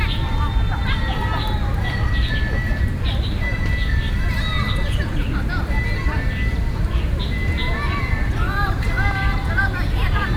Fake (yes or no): no